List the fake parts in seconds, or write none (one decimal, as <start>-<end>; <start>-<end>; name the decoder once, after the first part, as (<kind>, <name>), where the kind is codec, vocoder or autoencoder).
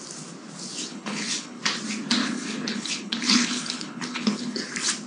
0.9-1.6 (codec, HILCodec); 2.2-4.6